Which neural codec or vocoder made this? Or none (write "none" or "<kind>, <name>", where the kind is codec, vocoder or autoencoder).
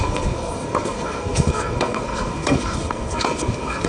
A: codec, SNAC